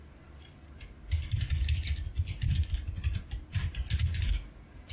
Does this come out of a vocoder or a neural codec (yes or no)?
no